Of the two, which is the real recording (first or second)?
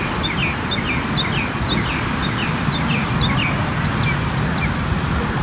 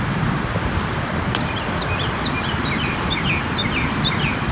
first